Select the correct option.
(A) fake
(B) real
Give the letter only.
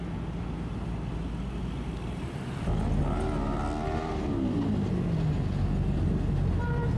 B